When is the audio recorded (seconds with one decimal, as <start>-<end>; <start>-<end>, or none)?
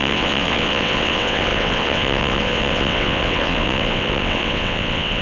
none